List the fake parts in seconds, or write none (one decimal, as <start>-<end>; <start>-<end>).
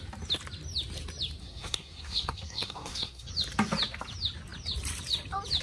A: 1.4-3.3